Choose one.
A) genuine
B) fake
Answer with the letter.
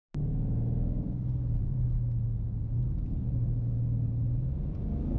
A